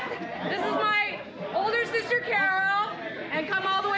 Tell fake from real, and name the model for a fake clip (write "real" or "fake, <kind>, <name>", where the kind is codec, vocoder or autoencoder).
real